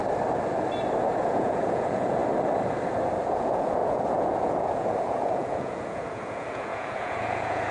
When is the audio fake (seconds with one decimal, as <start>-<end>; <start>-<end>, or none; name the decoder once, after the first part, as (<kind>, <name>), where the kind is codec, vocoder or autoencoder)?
1.0-2.2 (vocoder, Vocos); 3.2-7.7